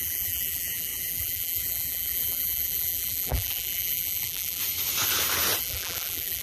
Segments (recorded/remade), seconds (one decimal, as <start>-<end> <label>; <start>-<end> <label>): 0.0-4.6 remade; 4.6-5.6 recorded; 5.6-6.4 remade